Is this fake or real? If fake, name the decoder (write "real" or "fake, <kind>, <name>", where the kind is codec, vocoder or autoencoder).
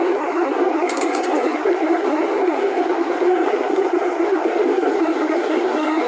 fake, codec, SNAC